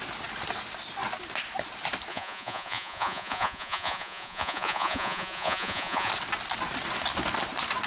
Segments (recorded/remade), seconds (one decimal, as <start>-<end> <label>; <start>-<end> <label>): 0.0-2.1 recorded; 2.1-6.1 remade; 6.1-7.9 recorded